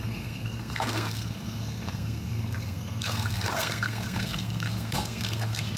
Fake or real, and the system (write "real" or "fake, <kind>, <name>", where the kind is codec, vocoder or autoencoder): fake, codec, SNAC